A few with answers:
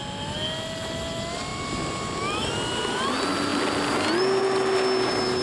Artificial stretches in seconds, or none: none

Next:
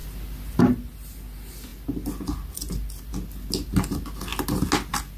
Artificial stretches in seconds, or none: none

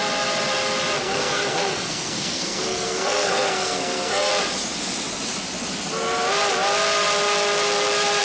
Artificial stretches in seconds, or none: 1.0-4.3 (codec, SNAC)

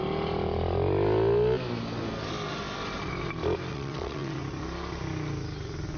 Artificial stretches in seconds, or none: 3.7-4.4 (vocoder, WaveNeXt)

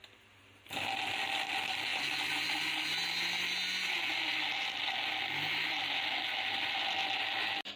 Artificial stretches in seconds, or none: none